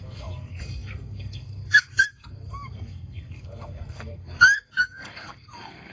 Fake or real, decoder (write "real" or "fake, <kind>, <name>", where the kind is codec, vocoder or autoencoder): fake, codec, SNAC